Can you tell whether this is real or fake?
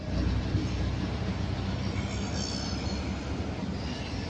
real